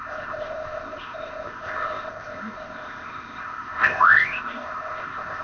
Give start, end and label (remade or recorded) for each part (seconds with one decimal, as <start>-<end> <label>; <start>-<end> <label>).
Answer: 0.0-5.4 remade